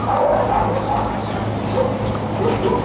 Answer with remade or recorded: recorded